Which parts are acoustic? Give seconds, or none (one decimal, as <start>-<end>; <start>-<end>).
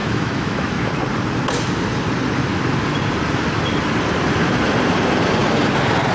0.9-6.1